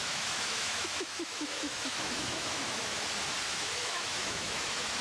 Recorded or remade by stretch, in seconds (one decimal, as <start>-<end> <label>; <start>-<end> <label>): 0.0-3.0 remade; 3.0-3.5 recorded; 3.5-5.0 remade